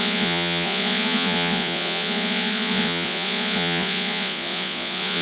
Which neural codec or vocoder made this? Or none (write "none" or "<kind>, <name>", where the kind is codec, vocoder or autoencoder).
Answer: vocoder, Vocos